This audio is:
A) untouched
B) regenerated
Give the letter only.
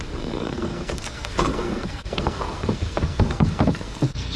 B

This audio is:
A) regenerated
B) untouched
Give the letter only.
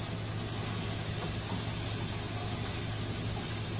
B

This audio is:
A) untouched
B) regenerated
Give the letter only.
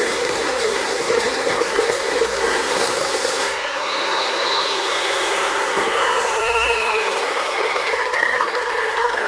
B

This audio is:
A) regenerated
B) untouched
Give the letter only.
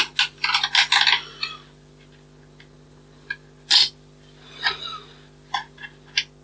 B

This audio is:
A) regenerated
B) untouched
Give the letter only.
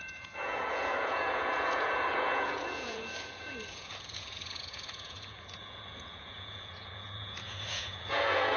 A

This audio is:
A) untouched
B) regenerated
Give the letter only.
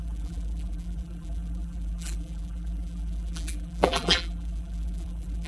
B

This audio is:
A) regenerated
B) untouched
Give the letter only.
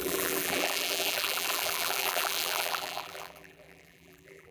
A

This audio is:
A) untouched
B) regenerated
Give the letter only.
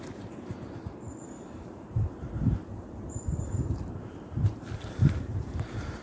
B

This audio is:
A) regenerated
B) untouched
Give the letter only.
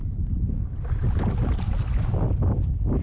B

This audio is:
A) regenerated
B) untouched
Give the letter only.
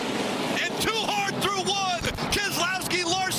B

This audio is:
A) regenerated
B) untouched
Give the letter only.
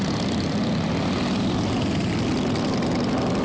B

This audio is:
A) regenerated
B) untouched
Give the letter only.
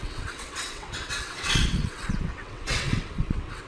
A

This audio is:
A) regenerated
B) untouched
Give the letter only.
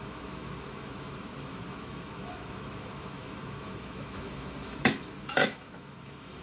A